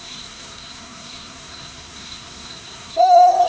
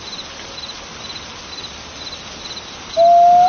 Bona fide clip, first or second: second